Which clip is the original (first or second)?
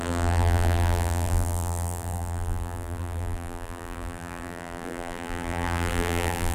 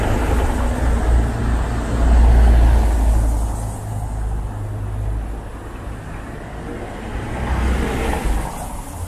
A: second